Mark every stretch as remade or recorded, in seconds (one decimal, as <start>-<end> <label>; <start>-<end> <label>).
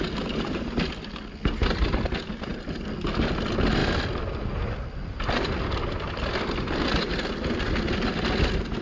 0.0-8.8 recorded